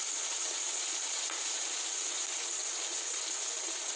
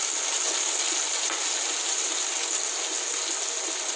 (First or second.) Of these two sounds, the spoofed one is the first